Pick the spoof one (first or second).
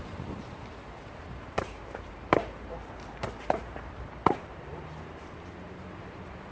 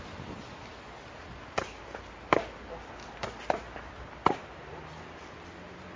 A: first